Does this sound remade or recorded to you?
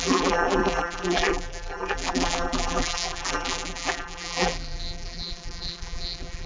remade